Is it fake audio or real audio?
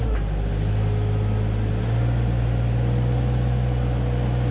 real